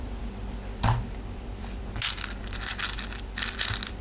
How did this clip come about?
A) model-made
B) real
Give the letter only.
A